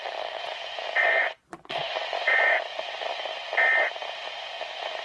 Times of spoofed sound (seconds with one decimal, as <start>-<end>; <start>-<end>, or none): 1.0-2.8